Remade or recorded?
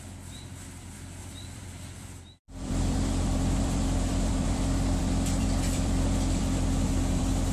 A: remade